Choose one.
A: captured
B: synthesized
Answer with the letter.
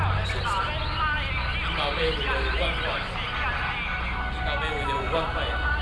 A